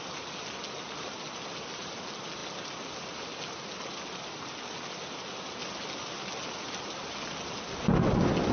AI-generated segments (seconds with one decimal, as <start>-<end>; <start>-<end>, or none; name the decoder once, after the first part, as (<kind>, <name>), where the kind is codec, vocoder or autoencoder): none